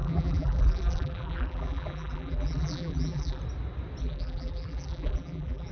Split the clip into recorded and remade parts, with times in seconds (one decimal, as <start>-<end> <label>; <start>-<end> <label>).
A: 0.0-3.4 remade; 3.4-4.0 recorded; 4.0-5.7 remade